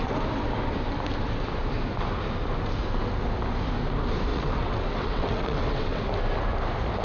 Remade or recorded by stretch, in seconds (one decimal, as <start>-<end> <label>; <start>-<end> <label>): 0.0-4.3 recorded; 4.3-6.0 remade; 6.0-7.0 recorded